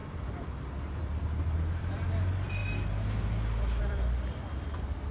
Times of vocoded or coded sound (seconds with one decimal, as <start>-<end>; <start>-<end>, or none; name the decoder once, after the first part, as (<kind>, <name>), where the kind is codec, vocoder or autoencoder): 0.0-1.1 (vocoder, BigVGAN v2); 1.7-2.6; 3.8-5.1